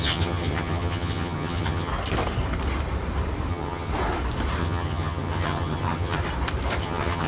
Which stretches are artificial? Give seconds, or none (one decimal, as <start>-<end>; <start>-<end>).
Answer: 0.0-1.9; 3.5-3.9; 4.6-6.2; 6.8-7.3